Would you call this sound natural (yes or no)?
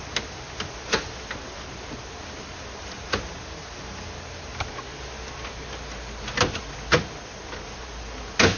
yes